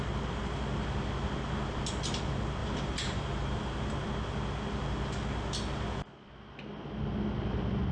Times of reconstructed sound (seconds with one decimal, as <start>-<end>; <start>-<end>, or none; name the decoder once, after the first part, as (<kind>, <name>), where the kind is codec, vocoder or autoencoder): 2.6-3.6 (vocoder, BigVGAN v2)

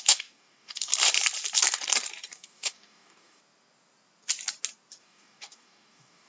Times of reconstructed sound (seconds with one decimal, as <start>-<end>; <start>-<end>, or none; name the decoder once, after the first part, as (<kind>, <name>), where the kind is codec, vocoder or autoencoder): 0.0-0.9 (codec, DAC); 2.3-3.4; 5.0-6.3

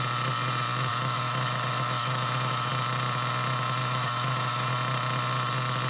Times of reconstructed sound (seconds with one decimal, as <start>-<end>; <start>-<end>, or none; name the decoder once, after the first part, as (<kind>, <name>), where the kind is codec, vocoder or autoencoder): 0.9-2.7 (autoencoder, DAC-VAE); 3.8-4.7